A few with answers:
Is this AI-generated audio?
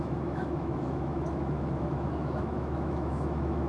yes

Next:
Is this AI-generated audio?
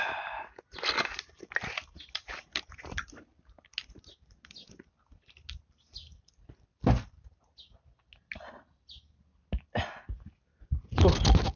no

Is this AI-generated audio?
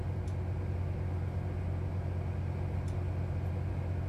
no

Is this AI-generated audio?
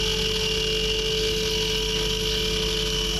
no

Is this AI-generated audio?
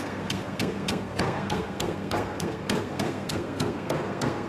yes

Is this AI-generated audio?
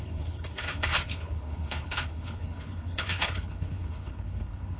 yes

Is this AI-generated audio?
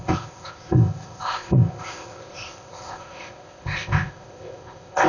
yes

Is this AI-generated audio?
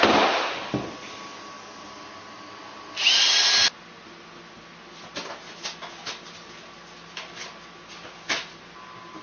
no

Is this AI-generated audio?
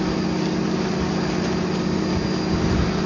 no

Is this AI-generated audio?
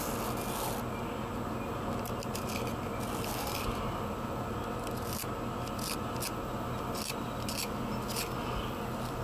no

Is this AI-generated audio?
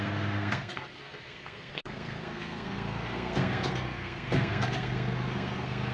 yes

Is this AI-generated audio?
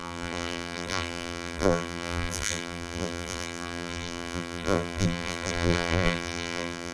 yes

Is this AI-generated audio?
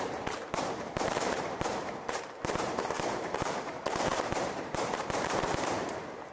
yes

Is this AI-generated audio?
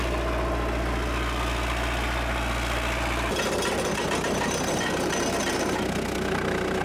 no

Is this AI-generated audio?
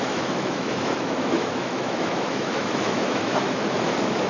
yes